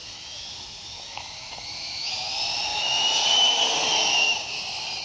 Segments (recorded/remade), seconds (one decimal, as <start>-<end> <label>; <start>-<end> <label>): 0.0-2.1 remade; 2.1-2.7 recorded; 2.7-3.6 remade; 3.6-4.1 recorded; 4.1-4.6 remade; 4.6-5.0 recorded